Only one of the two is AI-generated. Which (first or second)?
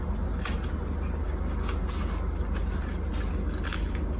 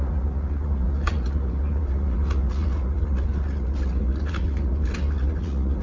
second